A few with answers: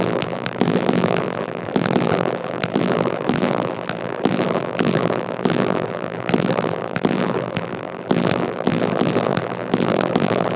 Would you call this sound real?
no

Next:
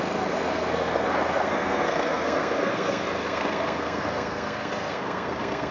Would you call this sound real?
no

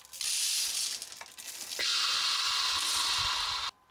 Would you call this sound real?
yes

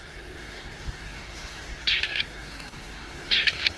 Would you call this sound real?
no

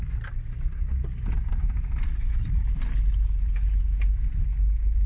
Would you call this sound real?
yes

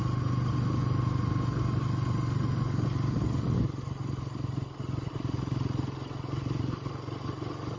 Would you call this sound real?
yes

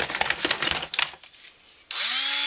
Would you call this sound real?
yes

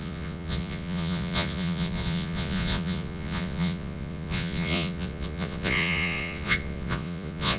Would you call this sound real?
no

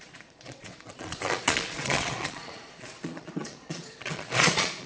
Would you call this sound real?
no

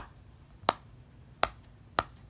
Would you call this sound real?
yes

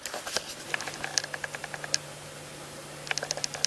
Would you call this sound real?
yes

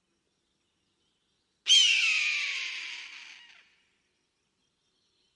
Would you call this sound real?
yes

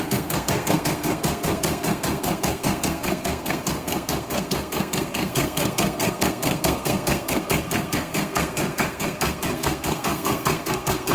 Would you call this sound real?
no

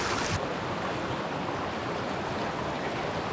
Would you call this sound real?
yes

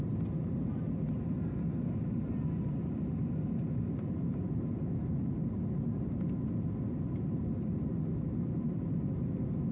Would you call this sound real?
yes